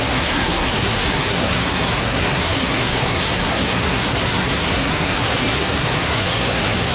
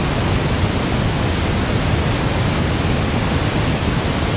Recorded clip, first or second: second